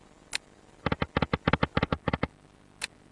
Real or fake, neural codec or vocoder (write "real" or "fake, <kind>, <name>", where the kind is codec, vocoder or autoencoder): real